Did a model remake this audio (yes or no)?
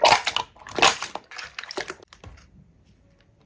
no